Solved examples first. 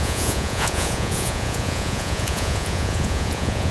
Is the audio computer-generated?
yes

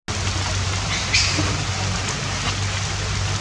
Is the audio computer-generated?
no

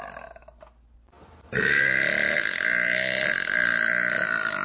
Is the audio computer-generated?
no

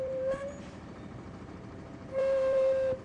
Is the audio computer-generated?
yes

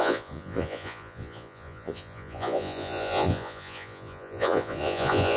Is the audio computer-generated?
yes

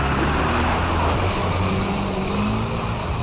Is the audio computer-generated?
no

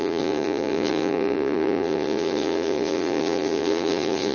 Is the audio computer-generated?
yes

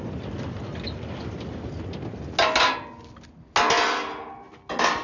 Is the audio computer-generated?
no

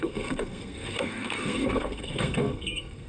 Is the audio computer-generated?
yes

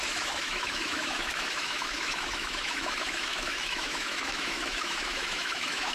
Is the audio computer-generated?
yes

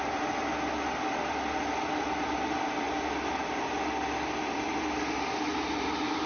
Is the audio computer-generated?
no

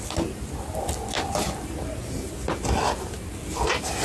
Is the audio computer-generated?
no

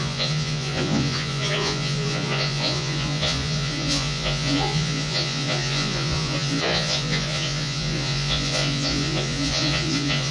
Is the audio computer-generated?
yes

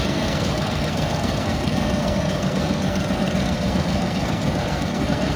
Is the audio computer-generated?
yes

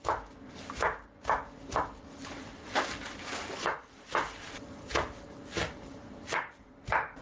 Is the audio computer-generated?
no